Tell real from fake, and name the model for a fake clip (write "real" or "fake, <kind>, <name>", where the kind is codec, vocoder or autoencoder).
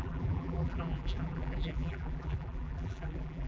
fake, vocoder, BigVGAN v2